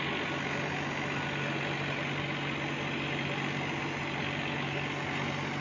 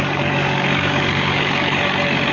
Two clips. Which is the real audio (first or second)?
first